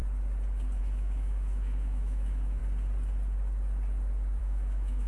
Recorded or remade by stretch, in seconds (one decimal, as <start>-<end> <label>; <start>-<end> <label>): 0.0-0.8 recorded; 0.8-2.6 remade; 2.6-4.4 recorded; 4.4-5.1 remade